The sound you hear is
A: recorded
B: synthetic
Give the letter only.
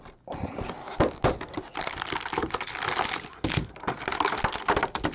A